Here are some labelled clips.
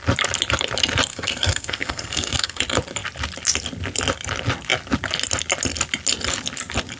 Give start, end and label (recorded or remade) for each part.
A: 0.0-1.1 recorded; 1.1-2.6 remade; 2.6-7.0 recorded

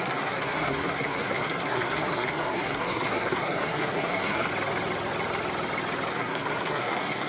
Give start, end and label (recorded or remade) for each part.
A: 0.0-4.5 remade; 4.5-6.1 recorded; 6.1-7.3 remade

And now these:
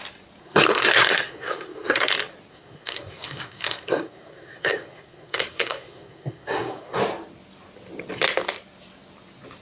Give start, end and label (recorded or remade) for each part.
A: 0.0-0.4 recorded; 0.4-2.1 remade; 2.1-2.5 recorded; 2.5-7.0 remade; 7.0-9.6 recorded

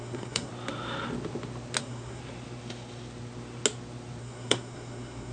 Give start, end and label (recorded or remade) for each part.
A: 0.0-0.5 remade; 0.5-1.8 recorded; 1.8-2.2 remade; 2.2-4.2 recorded; 4.2-5.3 remade

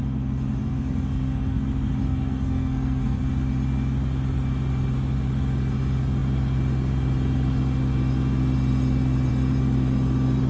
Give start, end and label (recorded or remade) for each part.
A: 0.0-0.6 recorded; 0.6-1.6 remade; 1.6-2.0 recorded; 2.0-3.2 remade; 3.2-10.5 recorded